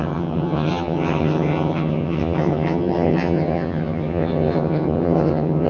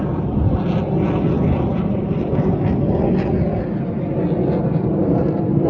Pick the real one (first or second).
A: second